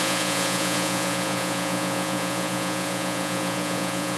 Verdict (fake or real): fake